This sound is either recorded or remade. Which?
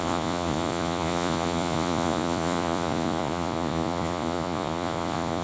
remade